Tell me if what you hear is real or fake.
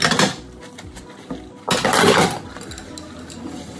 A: real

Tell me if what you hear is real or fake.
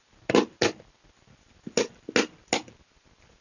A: real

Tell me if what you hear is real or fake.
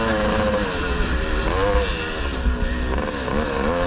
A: real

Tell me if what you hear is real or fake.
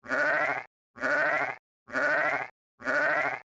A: real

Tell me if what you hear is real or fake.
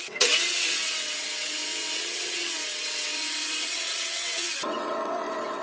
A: fake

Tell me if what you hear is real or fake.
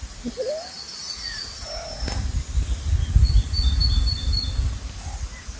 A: real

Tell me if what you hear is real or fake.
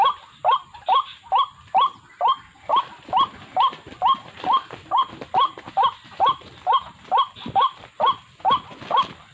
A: real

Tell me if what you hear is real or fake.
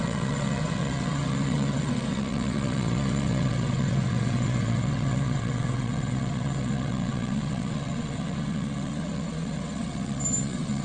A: fake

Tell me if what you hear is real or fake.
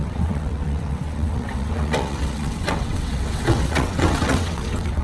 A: fake